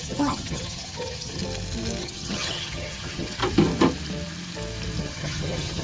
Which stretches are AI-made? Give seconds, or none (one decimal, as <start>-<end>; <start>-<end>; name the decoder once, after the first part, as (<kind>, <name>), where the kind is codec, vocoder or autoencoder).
0.0-1.4 (vocoder, HiFi-GAN); 2.0-3.4; 5.0-5.8